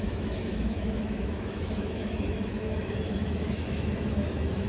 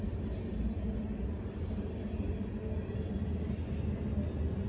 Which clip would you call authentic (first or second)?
second